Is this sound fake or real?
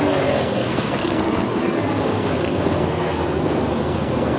fake